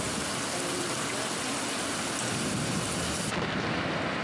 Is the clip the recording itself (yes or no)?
yes